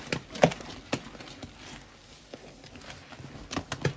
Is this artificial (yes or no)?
no